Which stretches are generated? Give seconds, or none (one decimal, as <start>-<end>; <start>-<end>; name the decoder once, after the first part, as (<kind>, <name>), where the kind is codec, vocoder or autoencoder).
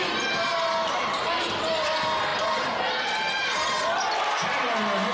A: none